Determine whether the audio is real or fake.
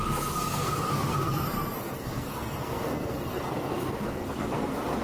fake